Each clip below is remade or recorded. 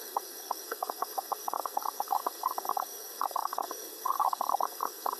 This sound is remade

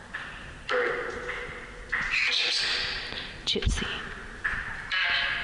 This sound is recorded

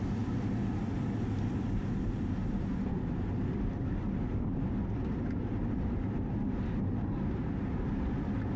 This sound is recorded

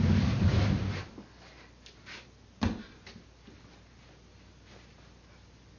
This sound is recorded